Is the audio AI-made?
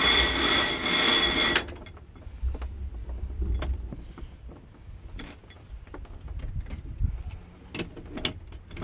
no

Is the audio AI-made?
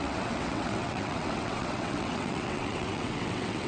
yes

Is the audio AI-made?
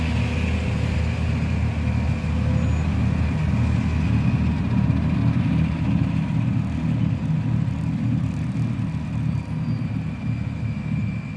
no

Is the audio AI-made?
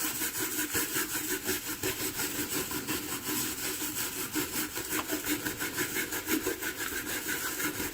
no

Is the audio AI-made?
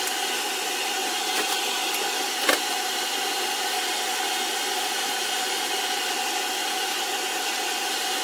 no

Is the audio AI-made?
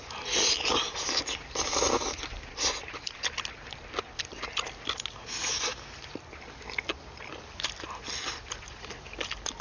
no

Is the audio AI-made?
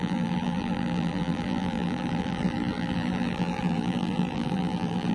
yes